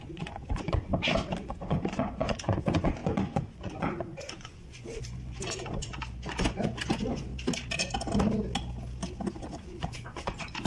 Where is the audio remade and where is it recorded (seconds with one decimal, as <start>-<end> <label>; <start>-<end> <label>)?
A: 0.0-0.9 remade; 0.9-1.4 recorded; 1.4-7.3 remade; 7.3-9.5 recorded; 9.5-10.7 remade